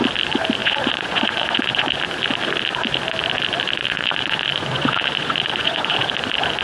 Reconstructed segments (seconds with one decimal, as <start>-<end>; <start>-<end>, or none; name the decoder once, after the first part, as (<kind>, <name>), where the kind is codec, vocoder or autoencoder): 0.6-2.0 (vocoder, Vocos); 3.8-6.0